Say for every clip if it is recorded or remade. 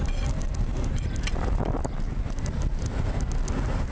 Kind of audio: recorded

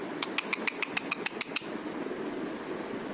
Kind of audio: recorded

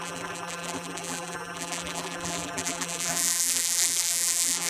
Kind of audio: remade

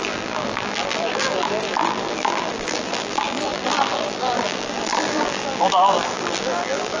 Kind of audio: remade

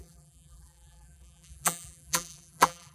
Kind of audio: remade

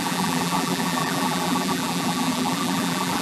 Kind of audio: remade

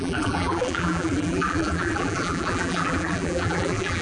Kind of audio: remade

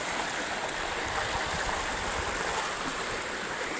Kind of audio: remade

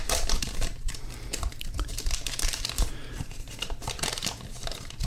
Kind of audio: remade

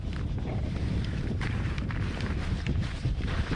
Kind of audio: remade